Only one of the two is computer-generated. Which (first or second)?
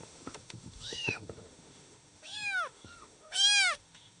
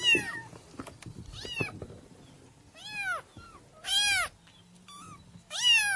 first